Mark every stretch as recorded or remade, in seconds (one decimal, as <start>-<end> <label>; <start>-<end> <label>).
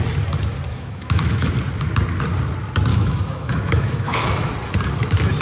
0.0-0.7 recorded; 0.7-1.5 remade; 1.5-2.9 recorded; 2.9-4.5 remade; 4.5-5.4 recorded